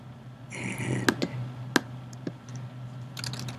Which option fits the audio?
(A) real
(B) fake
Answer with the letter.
A